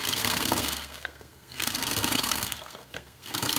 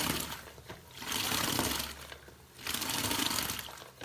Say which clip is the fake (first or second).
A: first